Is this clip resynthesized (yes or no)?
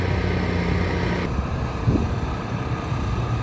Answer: no